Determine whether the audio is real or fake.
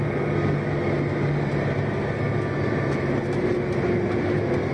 real